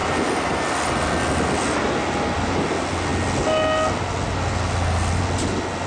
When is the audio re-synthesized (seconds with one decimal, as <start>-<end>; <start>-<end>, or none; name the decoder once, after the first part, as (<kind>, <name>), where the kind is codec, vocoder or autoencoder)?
none